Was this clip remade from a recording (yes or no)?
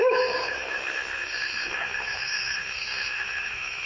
yes